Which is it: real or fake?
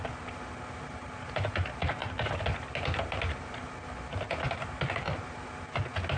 real